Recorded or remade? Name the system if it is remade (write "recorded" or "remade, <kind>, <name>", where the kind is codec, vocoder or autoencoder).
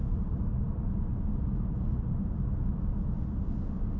recorded